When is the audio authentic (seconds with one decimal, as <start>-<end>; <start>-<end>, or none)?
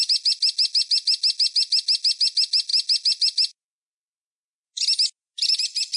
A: 0.0-6.0